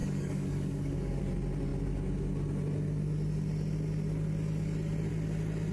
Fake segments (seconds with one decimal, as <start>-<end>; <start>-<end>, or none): 0.0-1.2